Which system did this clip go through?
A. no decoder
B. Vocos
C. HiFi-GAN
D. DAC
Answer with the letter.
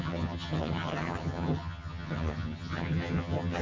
C